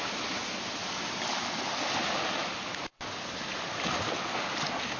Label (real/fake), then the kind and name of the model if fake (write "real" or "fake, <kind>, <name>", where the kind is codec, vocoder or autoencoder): real